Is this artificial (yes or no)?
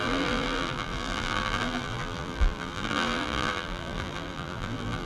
yes